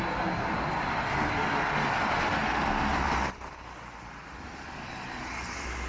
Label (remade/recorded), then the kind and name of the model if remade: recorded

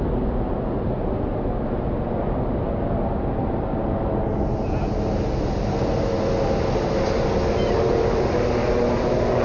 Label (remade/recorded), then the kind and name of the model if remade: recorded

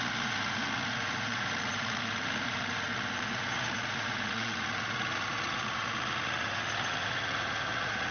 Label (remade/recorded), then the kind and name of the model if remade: remade, vocoder, Vocos